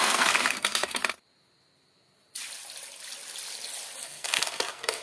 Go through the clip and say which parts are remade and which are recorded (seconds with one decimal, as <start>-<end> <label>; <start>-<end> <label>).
0.0-1.0 remade; 1.0-4.0 recorded; 4.0-5.0 remade